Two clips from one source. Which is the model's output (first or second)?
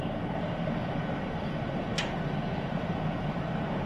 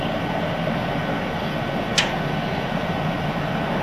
first